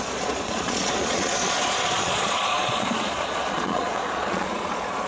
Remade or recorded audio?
remade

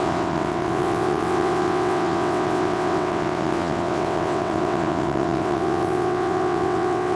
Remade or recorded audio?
remade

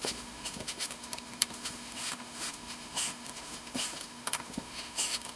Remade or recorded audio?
remade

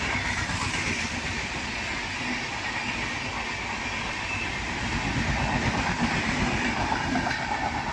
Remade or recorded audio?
recorded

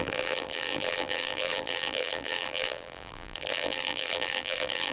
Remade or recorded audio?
remade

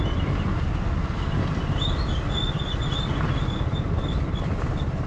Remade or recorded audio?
recorded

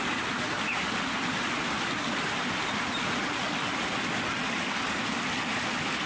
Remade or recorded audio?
recorded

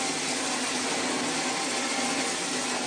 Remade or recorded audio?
recorded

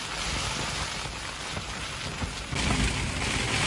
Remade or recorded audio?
recorded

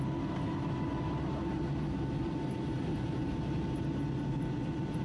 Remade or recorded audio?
recorded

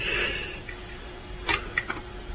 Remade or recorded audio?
recorded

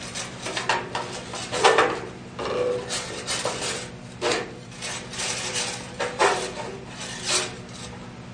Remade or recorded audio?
recorded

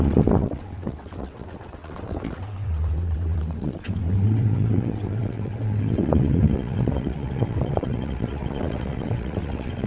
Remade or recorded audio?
remade